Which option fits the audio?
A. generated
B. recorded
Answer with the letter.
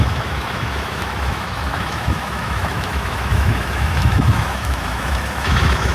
A